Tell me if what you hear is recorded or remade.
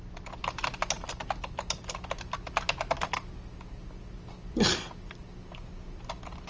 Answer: recorded